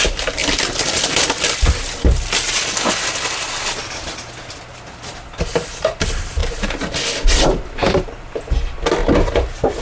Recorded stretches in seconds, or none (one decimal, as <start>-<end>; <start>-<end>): 0.0-9.8

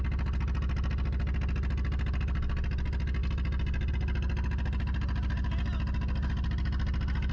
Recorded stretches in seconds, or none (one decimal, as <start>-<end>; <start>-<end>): 0.0-7.3

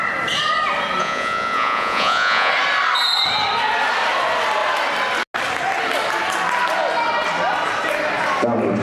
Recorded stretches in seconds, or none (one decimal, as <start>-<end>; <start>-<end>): 0.0-1.0; 2.5-8.8